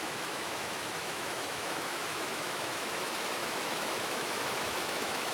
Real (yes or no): no